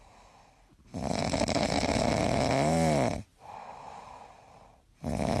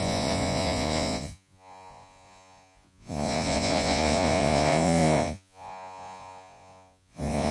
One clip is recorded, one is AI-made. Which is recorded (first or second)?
first